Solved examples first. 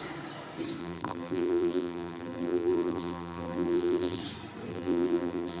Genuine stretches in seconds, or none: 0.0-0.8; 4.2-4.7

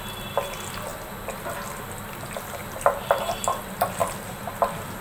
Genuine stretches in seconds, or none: 0.0-2.6; 3.3-5.0

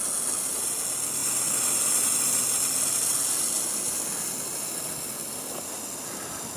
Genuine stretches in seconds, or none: 0.0-6.6

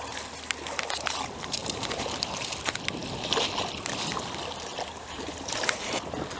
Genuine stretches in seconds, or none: 0.0-6.4

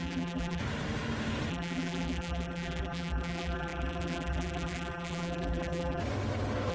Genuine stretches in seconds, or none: 0.6-1.5; 6.0-6.7

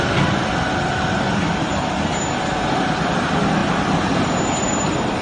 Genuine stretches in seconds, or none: 0.0-5.2